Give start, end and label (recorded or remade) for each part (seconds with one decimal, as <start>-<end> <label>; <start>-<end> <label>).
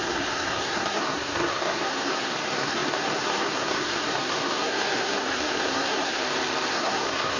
0.0-6.2 remade; 6.2-6.7 recorded; 6.7-7.4 remade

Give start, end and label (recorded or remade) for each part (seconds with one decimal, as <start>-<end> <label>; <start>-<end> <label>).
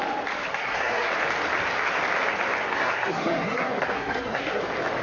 0.0-0.5 recorded; 0.5-1.1 remade; 1.1-2.7 recorded; 2.7-4.6 remade; 4.6-5.0 recorded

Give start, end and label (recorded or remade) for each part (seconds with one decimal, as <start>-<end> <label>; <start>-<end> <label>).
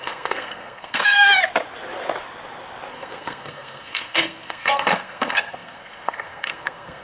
0.0-1.3 remade; 1.3-2.9 recorded; 2.9-7.0 remade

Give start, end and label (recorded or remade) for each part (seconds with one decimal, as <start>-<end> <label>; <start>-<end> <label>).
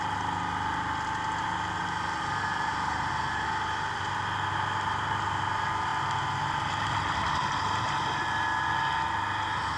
0.0-9.8 recorded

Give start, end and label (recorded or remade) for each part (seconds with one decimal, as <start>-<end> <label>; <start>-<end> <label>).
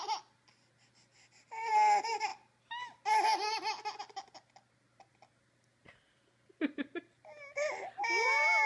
0.0-8.7 recorded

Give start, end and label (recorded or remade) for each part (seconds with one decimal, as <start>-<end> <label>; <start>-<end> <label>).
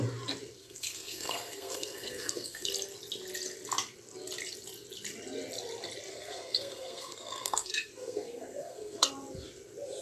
0.0-0.6 recorded; 0.6-2.7 remade; 2.7-6.1 recorded; 6.1-9.1 remade; 9.1-10.0 recorded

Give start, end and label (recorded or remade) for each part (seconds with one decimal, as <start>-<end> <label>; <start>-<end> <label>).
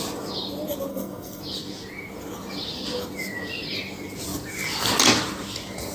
0.0-0.9 recorded; 0.9-1.4 remade; 1.4-5.9 recorded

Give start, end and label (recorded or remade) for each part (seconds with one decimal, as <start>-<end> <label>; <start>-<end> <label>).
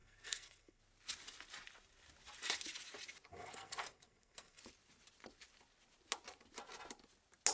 0.0-0.8 remade; 0.8-3.3 recorded; 3.3-4.6 remade; 4.6-7.5 recorded